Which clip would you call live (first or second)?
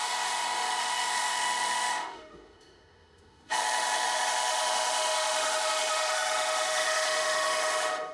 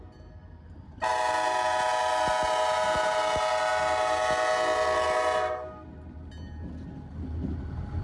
second